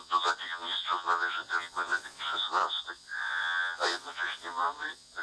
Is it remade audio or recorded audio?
remade